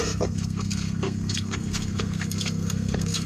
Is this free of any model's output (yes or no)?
no